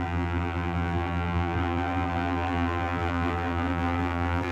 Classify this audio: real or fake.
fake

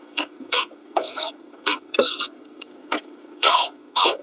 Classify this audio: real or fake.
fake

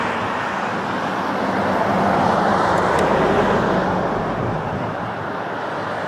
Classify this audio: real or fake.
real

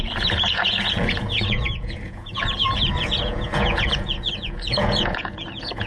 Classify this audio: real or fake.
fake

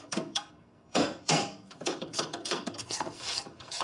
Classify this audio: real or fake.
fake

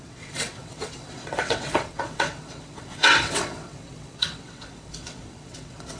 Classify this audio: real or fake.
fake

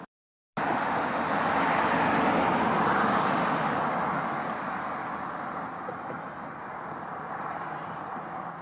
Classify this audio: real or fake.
real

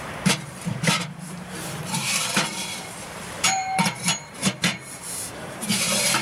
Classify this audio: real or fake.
fake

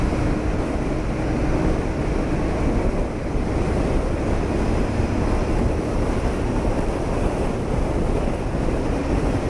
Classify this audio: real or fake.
real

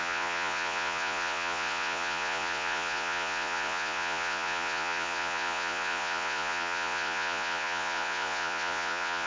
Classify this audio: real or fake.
fake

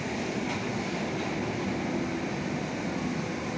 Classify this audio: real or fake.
real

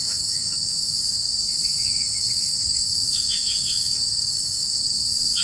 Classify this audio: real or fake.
fake